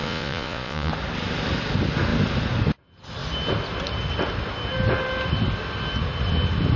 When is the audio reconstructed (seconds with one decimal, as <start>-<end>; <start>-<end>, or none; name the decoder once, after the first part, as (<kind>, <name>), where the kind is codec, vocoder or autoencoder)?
0.0-0.9 (vocoder, Vocos)